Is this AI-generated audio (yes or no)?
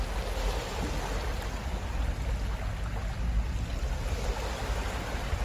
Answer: no